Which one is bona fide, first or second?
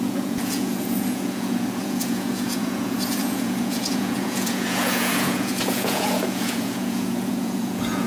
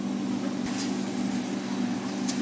second